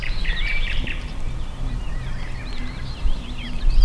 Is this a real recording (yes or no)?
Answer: no